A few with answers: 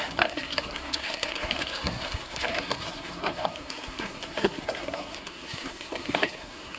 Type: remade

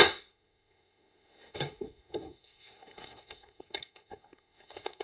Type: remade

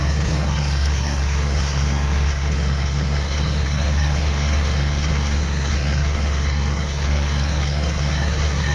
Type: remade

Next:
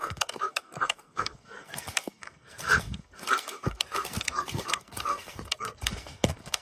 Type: remade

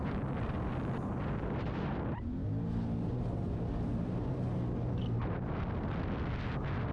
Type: recorded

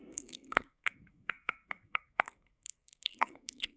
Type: remade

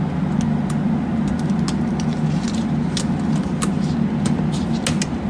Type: recorded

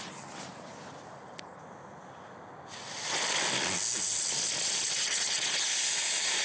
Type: recorded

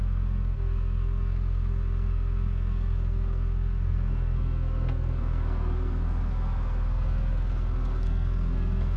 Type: remade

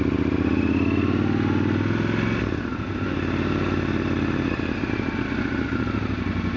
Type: recorded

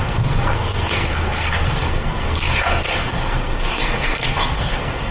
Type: remade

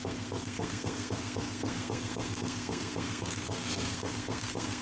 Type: remade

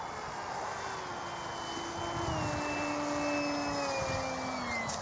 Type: recorded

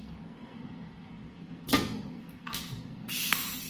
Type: remade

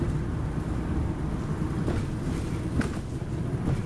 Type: recorded